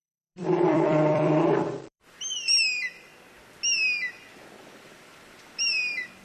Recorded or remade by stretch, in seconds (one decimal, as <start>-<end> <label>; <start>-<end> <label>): 0.0-3.1 remade; 3.1-4.6 recorded; 4.6-6.2 remade